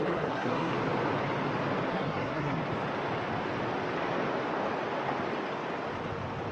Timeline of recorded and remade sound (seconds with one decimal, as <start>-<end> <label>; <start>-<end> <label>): 0.0-0.7 remade; 0.7-1.9 recorded; 1.9-2.6 remade; 2.6-6.5 recorded